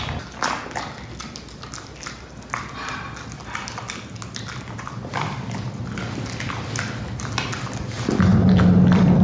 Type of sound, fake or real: real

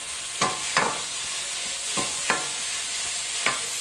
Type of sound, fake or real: fake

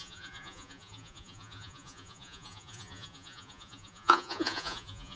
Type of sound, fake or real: fake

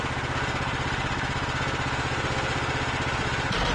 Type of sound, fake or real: real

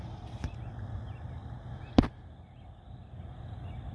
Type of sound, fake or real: real